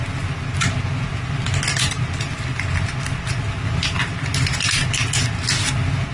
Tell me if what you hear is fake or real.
real